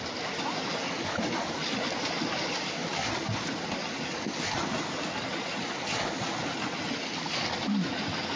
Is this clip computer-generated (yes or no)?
no